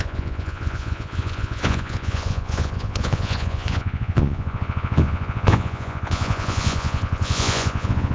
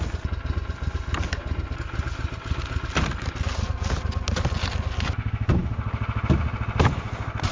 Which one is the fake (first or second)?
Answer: first